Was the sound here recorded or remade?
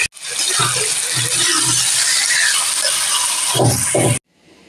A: recorded